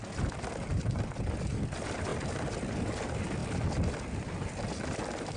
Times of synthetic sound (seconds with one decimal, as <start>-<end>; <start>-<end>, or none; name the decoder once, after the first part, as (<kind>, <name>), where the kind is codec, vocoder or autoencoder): none